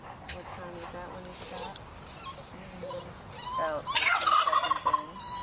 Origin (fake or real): real